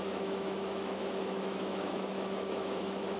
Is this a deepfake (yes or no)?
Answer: yes